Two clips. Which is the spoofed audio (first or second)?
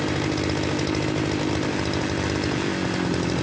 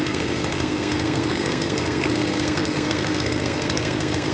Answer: second